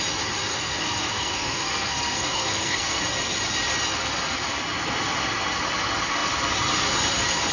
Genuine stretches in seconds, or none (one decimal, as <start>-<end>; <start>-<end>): 0.0-0.5; 3.0-7.5